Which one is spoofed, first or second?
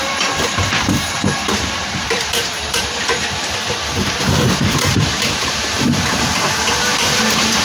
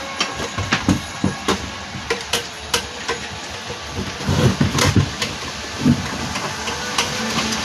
first